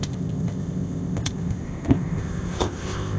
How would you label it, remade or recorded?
remade